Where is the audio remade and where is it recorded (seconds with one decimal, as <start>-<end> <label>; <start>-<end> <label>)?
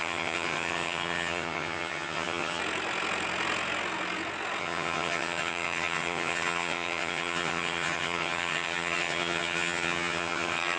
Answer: 0.0-2.6 remade; 2.6-4.6 recorded; 4.6-10.8 remade